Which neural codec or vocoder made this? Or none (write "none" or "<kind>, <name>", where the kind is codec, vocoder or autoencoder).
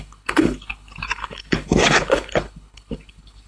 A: codec, HILCodec